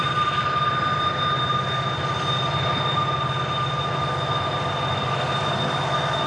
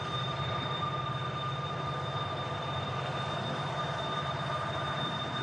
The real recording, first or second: first